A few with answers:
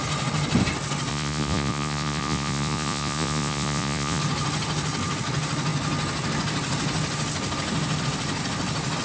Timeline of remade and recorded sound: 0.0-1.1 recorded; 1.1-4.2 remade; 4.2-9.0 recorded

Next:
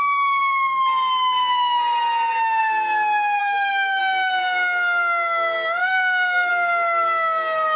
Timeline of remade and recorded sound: 0.0-3.4 recorded; 3.4-4.0 remade; 4.0-5.8 recorded; 5.8-6.5 remade; 6.5-7.8 recorded

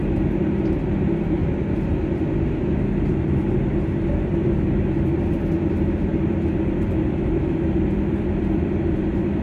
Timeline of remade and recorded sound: 0.0-1.4 remade; 1.4-3.2 recorded; 3.2-9.4 remade

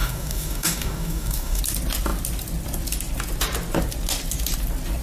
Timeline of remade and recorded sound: 0.0-1.6 remade; 1.6-5.0 recorded

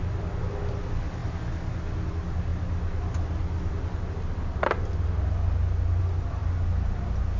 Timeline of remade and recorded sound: 0.0-7.4 recorded

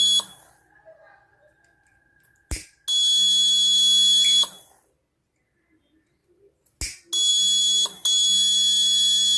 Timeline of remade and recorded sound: 0.0-9.4 recorded